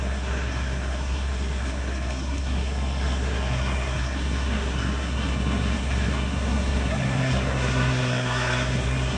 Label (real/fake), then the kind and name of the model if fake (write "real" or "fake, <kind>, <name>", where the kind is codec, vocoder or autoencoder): fake, codec, SNAC